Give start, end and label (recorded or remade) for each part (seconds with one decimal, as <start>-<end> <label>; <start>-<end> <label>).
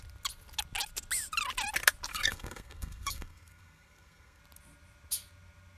0.0-2.1 recorded; 2.1-4.4 remade; 4.4-5.8 recorded